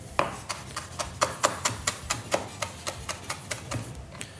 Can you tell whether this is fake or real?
fake